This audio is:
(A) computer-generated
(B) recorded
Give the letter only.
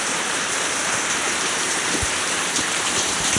A